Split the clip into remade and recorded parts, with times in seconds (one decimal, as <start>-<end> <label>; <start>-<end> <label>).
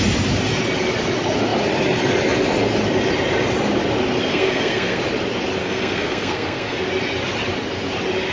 0.0-4.3 recorded; 4.3-5.0 remade; 5.0-5.6 recorded; 5.6-6.9 remade; 6.9-8.3 recorded